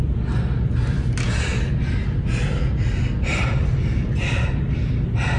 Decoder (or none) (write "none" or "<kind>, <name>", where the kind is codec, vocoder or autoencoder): none